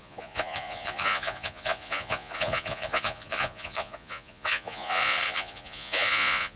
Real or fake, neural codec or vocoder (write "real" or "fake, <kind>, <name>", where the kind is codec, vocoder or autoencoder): fake, vocoder, Vocos